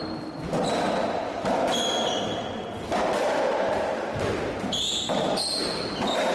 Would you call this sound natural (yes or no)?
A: yes